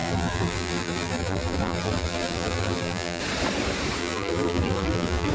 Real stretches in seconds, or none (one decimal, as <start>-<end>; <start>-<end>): 3.2-4.0